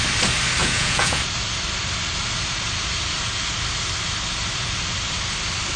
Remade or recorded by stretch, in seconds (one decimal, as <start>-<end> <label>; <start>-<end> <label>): 0.0-0.6 recorded; 0.6-1.2 remade; 1.2-5.8 recorded